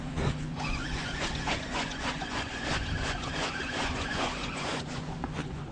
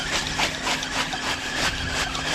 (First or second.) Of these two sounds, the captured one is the second